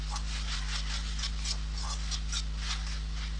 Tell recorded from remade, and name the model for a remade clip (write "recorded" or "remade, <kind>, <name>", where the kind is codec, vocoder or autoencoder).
recorded